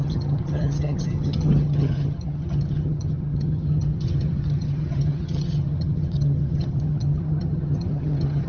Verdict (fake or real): fake